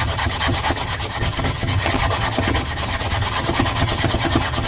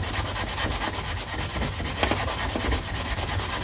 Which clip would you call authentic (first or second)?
second